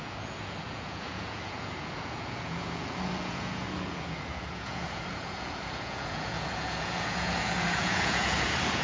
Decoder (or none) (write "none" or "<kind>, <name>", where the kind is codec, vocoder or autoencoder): vocoder, Vocos